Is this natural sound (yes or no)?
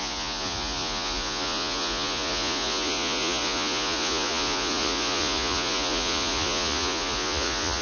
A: no